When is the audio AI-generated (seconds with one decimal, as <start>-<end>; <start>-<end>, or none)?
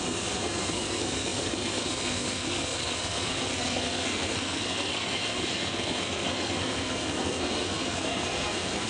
0.0-8.9